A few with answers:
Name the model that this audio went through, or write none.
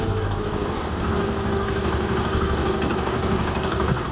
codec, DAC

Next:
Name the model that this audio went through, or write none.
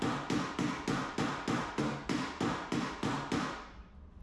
none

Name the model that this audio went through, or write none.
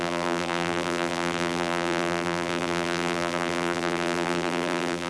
vocoder, BigVGAN v2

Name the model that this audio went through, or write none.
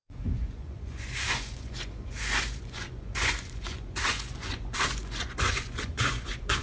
vocoder, Vocos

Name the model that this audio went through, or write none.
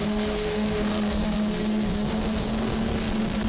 codec, SNAC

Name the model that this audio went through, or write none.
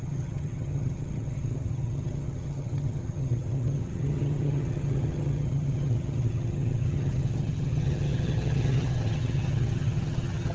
vocoder, HiFi-GAN